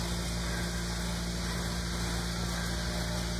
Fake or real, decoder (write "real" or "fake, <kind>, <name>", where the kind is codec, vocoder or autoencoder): real